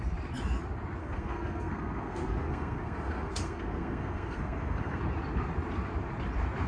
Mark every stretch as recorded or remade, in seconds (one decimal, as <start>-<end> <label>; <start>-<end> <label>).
0.0-1.0 recorded; 1.0-5.0 remade; 5.0-6.7 recorded